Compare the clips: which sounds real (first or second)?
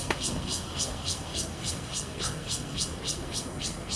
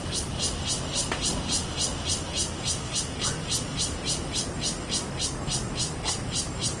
second